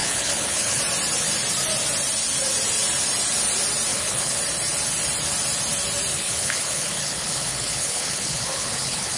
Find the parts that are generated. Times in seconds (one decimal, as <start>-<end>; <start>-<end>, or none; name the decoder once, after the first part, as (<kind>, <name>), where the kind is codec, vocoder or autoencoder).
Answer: 0.0-0.8 (codec, HILCodec); 3.9-4.4; 6.1-9.2